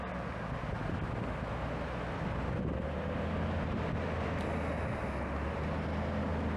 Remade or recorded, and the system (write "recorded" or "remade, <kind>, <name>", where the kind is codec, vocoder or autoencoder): recorded